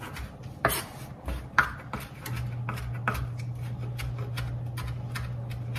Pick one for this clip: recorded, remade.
recorded